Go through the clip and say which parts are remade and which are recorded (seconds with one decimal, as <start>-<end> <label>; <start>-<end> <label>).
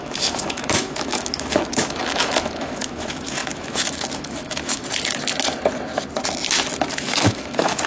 0.0-4.8 remade; 4.8-6.9 recorded; 6.9-7.9 remade